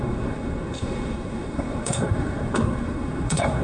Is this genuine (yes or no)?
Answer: no